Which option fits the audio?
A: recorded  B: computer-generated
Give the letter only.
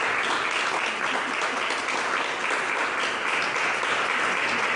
A